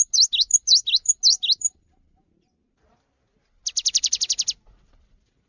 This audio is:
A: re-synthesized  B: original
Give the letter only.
B